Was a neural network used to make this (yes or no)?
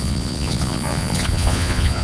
yes